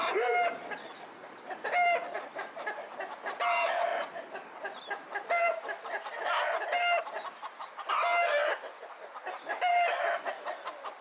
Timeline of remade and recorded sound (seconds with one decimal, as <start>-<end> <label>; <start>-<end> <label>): 0.0-11.0 recorded